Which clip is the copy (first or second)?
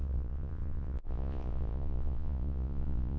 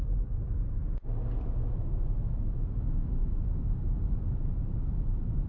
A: first